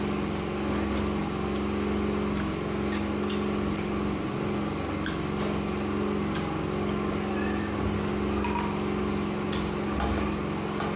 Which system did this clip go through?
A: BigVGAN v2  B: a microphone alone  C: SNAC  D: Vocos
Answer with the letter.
B